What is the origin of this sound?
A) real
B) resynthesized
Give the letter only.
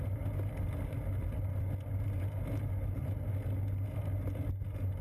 A